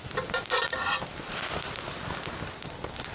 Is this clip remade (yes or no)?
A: yes